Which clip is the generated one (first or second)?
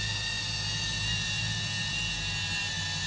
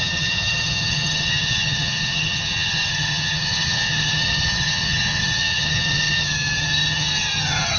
second